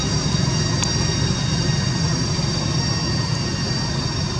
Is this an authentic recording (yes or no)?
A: yes